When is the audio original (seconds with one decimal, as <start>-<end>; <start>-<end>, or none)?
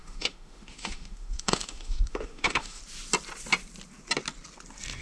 2.8-5.0